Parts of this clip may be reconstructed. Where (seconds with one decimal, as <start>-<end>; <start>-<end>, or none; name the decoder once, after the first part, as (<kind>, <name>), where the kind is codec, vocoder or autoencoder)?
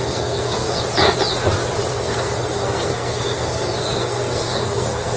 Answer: 0.0-0.8 (codec, SNAC); 1.9-5.2